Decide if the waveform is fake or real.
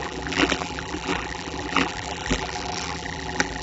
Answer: fake